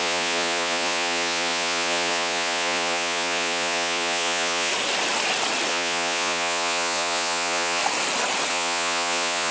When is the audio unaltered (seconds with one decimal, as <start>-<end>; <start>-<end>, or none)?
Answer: 4.7-5.7; 7.8-8.5